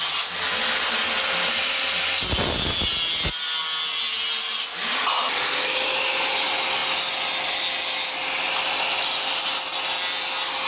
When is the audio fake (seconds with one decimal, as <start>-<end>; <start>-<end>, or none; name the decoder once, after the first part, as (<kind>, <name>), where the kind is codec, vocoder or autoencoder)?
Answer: none